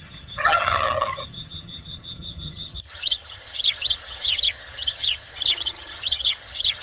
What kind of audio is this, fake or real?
fake